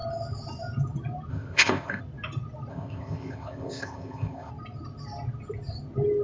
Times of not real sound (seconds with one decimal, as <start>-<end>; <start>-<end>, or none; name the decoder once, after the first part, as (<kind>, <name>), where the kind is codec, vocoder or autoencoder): 1.3-2.0 (codec, ZipCodec); 2.7-4.5